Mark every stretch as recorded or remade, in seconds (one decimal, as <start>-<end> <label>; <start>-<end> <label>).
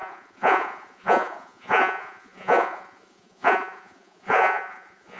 0.0-5.2 remade